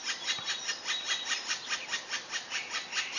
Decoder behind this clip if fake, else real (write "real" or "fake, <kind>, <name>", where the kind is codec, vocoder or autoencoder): real